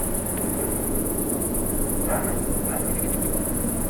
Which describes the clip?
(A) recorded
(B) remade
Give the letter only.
B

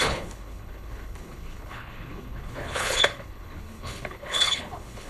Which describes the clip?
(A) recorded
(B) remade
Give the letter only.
B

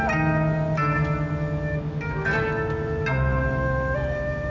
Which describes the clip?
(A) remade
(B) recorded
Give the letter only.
B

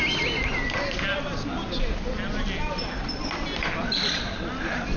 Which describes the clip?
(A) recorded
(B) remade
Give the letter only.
A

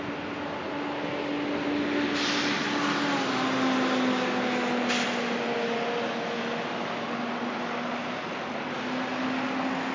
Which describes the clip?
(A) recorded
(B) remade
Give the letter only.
A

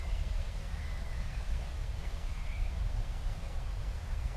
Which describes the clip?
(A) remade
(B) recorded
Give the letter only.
A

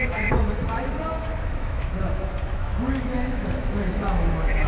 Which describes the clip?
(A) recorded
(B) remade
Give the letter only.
B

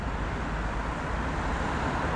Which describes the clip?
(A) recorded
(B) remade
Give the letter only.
A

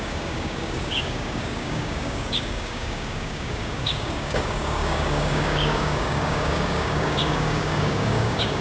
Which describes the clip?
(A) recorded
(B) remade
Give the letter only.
B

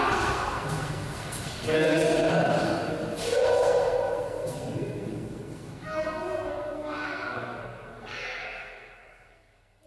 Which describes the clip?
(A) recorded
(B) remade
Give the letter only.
B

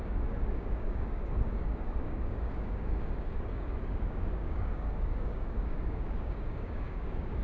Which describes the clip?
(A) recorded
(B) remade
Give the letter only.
B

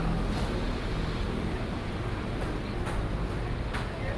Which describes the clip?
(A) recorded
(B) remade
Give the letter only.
A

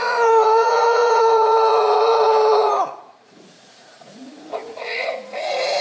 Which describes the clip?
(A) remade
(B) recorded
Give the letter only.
A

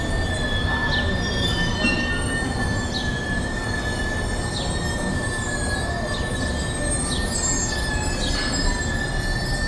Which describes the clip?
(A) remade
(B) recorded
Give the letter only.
B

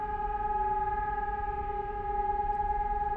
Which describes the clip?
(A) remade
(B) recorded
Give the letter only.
B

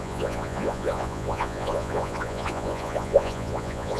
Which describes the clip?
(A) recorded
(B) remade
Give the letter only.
B